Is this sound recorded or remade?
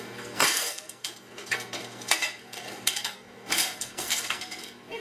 remade